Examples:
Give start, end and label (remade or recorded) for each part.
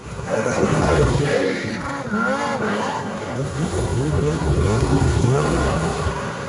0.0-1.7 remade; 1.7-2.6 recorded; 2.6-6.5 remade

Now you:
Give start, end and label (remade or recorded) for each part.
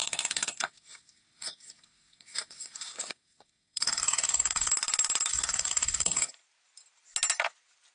0.0-4.7 remade; 4.7-5.3 recorded; 5.3-6.3 remade; 6.3-7.9 recorded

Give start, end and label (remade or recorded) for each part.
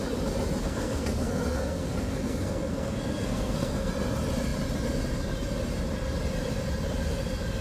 0.0-0.6 recorded; 0.6-3.9 remade; 3.9-7.6 recorded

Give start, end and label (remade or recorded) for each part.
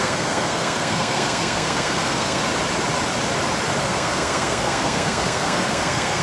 0.0-2.4 remade; 2.4-3.8 recorded; 3.8-6.2 remade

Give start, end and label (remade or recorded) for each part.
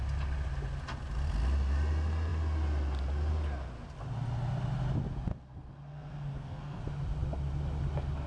0.0-5.3 recorded; 5.3-6.8 remade; 6.8-8.3 recorded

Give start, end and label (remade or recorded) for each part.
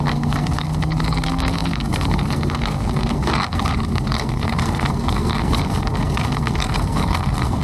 0.0-7.6 remade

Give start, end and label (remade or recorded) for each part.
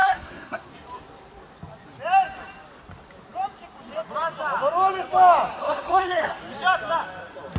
0.0-0.7 remade; 0.7-5.5 recorded; 5.5-6.4 remade; 6.4-7.6 recorded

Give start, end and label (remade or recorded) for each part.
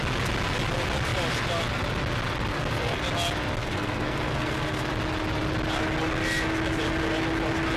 0.0-2.5 recorded; 2.5-3.0 remade; 3.0-3.6 recorded; 3.6-4.9 remade; 4.9-7.8 recorded